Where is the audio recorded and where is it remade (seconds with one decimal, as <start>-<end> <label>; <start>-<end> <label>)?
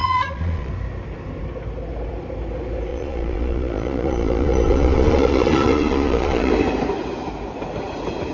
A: 0.0-0.7 remade; 0.7-2.9 recorded; 2.9-6.5 remade; 6.5-8.3 recorded